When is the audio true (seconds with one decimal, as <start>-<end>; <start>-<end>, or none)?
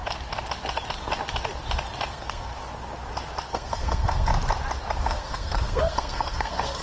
0.0-2.1; 2.5-3.5; 4.3-5.0